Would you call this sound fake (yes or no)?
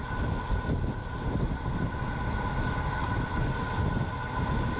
no